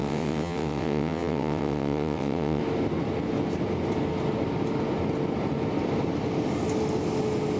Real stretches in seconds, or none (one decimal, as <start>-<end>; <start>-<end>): 2.6-7.6